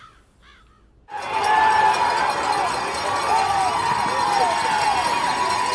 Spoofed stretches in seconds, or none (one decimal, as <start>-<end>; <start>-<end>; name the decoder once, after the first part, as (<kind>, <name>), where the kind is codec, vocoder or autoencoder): none

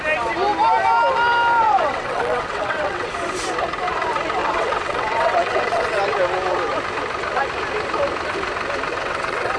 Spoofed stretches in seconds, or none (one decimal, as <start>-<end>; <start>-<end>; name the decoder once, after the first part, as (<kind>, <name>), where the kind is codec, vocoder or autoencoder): 1.6-3.1 (vocoder, WaveNeXt); 4.4-6.0; 8.9-9.6

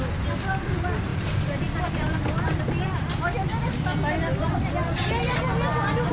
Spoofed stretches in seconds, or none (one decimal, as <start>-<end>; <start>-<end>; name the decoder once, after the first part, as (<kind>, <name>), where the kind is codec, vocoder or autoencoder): none